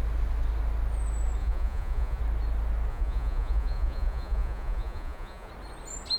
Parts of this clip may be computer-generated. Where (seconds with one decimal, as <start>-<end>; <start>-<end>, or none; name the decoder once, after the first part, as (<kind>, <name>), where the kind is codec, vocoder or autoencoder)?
1.4-2.2 (vocoder, Vocos); 2.9-5.5